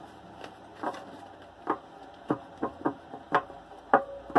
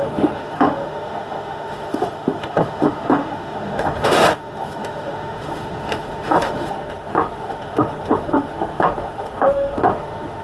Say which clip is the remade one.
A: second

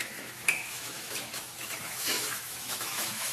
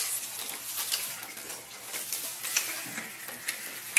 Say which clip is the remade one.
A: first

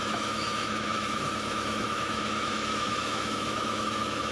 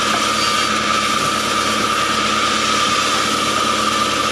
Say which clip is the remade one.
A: first